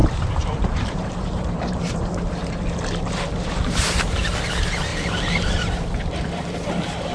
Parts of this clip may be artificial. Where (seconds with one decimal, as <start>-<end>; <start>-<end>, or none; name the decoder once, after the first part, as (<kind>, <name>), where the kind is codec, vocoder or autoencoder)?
0.0-2.6 (vocoder, BigVGAN v2); 4.9-5.5